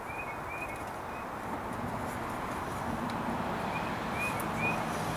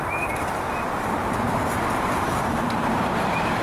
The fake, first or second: second